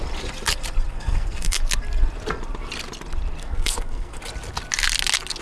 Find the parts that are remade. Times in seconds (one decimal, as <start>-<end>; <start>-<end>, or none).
0.9-1.6; 3.4-4.2